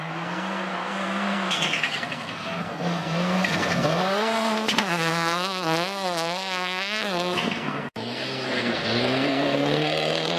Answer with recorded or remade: remade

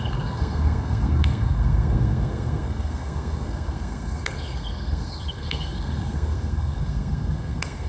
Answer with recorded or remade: remade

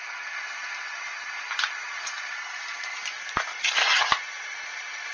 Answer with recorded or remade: recorded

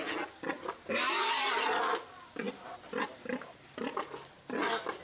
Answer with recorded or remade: recorded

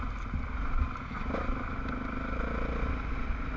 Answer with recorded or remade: recorded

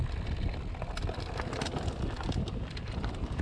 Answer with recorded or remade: recorded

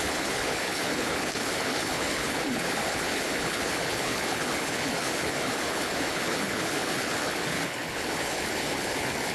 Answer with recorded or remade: remade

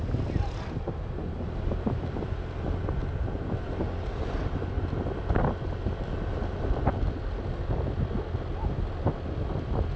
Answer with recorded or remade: recorded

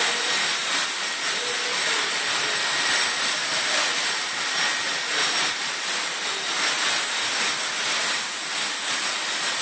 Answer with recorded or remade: recorded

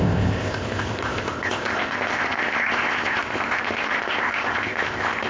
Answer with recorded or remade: remade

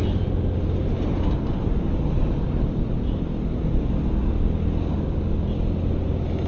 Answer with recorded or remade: recorded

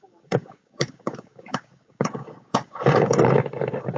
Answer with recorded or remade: remade